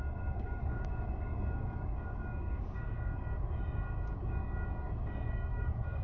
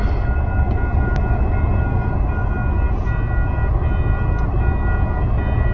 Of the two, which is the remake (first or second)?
first